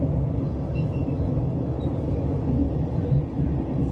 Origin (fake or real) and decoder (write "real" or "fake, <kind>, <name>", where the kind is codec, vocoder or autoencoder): real